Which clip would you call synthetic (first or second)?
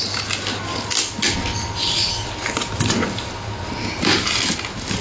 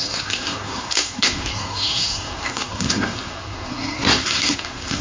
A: second